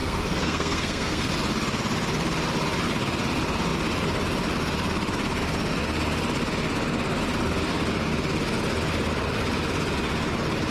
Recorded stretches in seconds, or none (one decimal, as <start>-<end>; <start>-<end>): 1.3-10.7